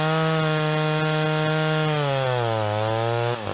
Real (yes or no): yes